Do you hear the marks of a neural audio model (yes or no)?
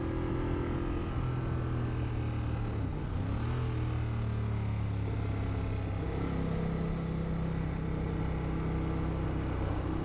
no